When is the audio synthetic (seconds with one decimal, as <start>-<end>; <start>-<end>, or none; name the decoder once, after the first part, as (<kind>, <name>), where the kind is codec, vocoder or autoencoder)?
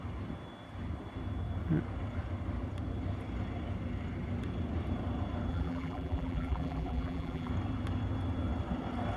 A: 5.5-7.5 (vocoder, BigVGAN v2)